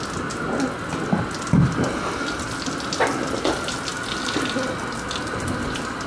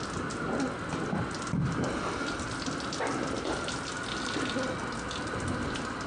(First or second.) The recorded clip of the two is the first